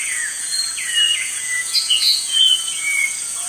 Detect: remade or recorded remade